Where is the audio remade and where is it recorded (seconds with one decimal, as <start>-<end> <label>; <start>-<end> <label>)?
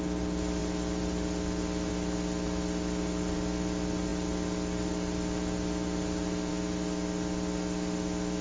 0.0-8.4 recorded